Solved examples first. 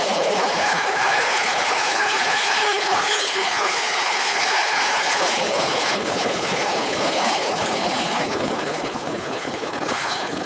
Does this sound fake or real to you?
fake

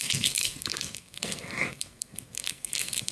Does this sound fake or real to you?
fake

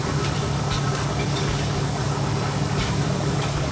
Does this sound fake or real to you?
fake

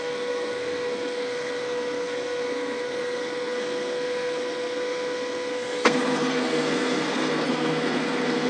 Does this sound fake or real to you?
fake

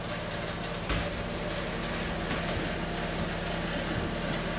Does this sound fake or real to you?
real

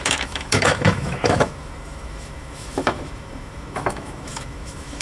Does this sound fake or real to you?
fake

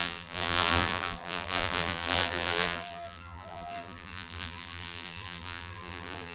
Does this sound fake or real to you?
fake